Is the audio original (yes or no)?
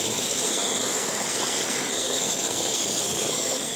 no